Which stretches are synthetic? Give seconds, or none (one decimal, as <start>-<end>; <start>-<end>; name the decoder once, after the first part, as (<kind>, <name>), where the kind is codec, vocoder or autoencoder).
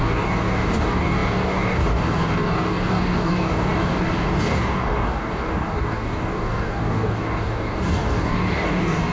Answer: 0.0-9.1 (codec, DAC)